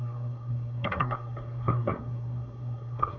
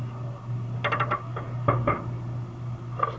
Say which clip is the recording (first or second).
second